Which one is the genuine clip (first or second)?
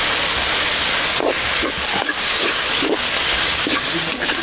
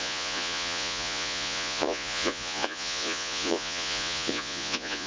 first